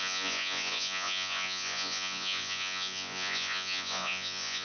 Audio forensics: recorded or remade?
remade